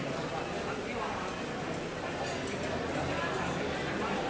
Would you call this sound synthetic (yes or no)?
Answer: no